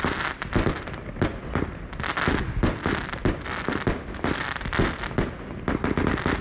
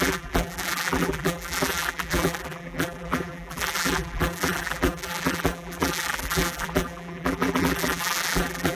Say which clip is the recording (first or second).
first